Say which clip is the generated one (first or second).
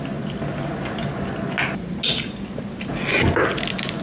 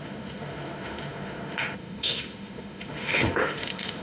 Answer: second